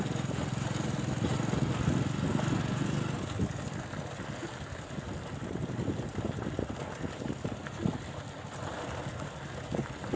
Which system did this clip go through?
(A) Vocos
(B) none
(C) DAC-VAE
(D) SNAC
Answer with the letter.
B